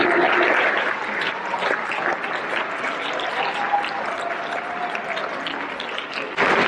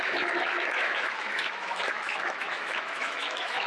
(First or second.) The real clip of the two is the first